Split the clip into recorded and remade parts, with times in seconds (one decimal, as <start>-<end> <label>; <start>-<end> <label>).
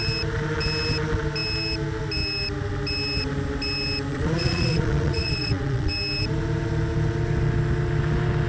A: 0.0-4.1 recorded; 4.1-5.9 remade; 5.9-8.5 recorded